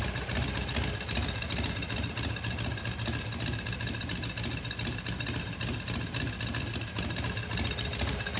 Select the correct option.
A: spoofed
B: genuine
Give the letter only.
B